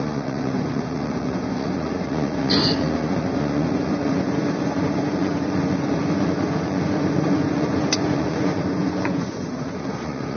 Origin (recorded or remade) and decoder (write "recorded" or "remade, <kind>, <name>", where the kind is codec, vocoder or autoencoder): remade, vocoder, Vocos